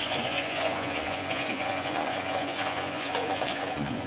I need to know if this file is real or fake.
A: fake